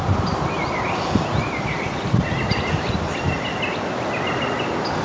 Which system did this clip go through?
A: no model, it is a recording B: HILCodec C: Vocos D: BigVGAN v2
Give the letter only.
A